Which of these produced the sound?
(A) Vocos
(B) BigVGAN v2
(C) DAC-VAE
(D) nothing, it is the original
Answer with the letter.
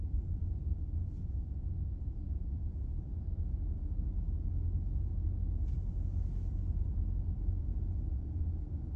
D